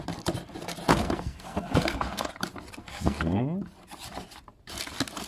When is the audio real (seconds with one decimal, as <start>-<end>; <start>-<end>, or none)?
0.0-0.9; 2.3-2.8; 3.4-5.3

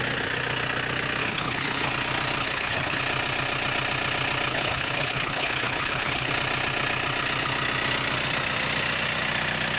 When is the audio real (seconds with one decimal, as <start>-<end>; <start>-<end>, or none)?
0.0-1.2; 1.9-2.4; 3.0-4.5; 6.3-9.8